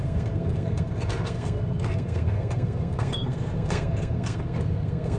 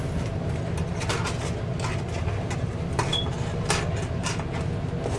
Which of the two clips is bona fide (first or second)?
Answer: second